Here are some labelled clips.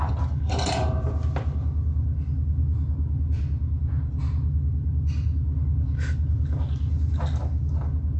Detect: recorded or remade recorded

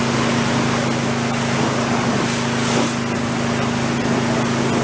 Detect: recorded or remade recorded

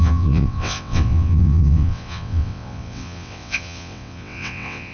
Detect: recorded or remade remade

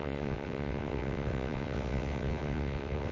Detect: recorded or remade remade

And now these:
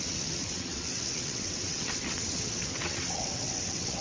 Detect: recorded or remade remade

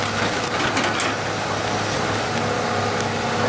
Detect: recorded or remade recorded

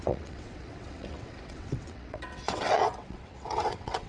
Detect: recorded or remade remade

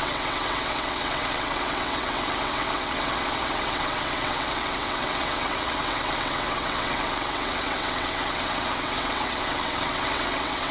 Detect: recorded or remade remade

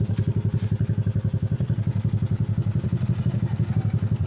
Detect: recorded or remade recorded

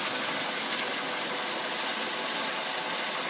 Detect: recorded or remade recorded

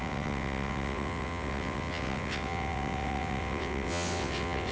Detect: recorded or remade remade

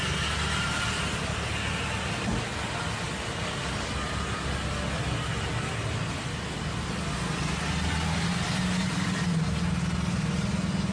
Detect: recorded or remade recorded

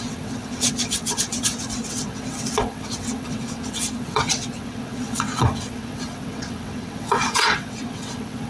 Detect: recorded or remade remade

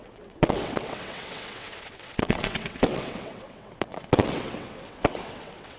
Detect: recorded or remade remade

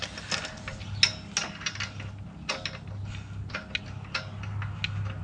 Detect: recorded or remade recorded